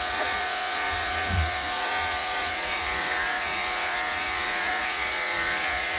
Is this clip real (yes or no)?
no